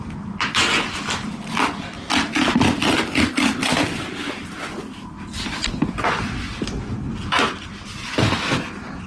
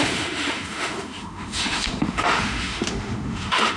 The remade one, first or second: second